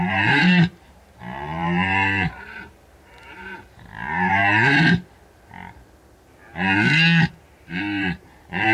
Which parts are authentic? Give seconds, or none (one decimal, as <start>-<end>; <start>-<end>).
4.4-7.7